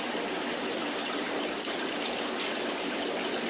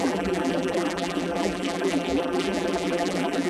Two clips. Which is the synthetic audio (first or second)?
second